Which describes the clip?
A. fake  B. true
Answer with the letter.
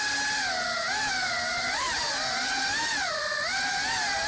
B